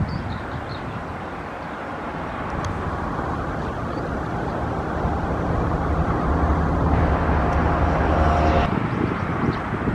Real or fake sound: real